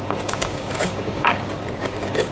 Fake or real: fake